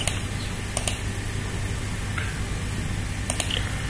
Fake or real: real